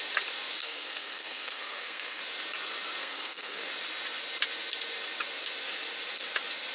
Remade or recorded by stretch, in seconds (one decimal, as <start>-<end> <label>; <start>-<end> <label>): 0.0-0.6 recorded; 0.6-2.2 remade; 2.2-3.0 recorded; 3.0-3.7 remade; 3.7-6.7 recorded